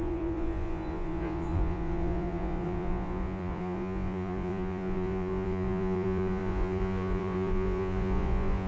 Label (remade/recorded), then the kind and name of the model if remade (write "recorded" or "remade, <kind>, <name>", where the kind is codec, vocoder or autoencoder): remade, vocoder, Vocos